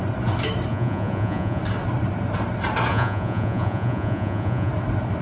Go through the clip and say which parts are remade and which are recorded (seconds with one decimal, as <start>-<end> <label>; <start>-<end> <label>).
0.0-0.7 recorded; 0.7-1.6 remade; 1.6-2.9 recorded; 2.9-4.7 remade; 4.7-5.2 recorded